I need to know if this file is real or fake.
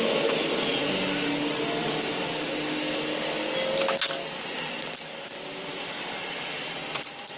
real